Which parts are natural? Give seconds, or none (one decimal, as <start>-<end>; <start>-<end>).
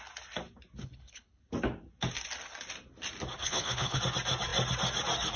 0.0-0.8; 1.4-3.4; 4.0-5.4